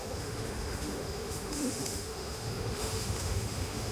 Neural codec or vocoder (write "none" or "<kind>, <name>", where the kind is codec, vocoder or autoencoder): autoencoder, DAC-VAE